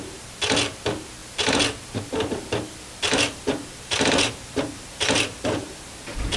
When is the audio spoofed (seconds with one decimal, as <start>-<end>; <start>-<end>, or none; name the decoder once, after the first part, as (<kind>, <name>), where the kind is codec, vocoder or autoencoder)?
3.1-5.7 (vocoder, BigVGAN v2)